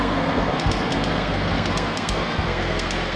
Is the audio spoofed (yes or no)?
yes